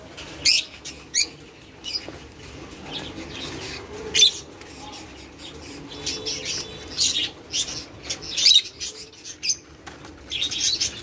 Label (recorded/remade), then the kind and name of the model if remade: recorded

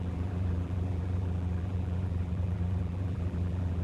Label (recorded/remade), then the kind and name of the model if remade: remade, vocoder, BigVGAN v2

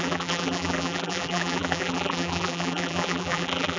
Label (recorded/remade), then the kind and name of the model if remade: remade, vocoder, BigVGAN v2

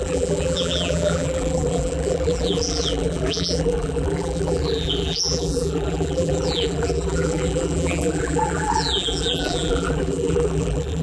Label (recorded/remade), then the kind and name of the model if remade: remade, vocoder, BigVGAN v2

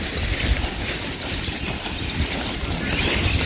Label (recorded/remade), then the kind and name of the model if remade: recorded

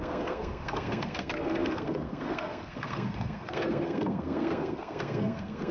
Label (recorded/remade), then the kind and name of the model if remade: remade, codec, SNAC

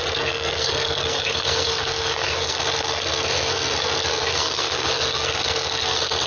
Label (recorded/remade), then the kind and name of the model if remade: remade, codec, SNAC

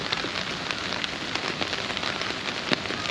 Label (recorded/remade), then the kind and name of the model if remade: recorded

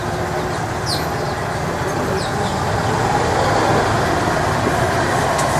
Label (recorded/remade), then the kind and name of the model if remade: recorded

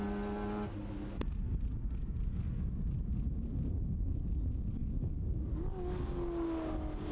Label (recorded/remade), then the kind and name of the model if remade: recorded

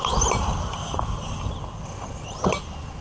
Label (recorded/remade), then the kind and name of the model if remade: recorded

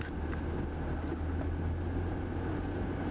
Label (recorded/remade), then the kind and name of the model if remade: recorded